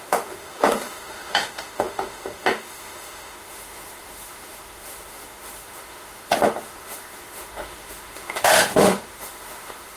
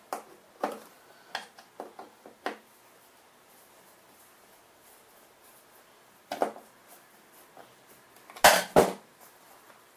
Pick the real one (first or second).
second